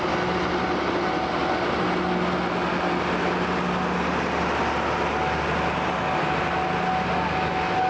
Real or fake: real